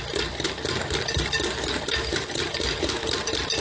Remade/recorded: recorded